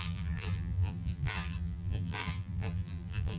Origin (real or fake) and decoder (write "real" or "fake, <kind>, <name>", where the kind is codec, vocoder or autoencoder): fake, vocoder, BigVGAN v2